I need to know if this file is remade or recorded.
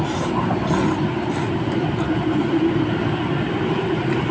recorded